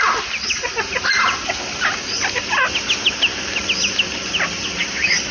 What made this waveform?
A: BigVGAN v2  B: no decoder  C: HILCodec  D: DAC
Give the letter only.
B